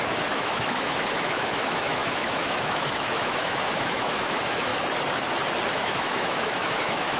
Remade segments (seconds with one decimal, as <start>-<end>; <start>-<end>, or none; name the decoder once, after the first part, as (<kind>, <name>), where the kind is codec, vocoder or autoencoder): 0.0-4.7 (autoencoder, DAC-VAE); 5.7-7.2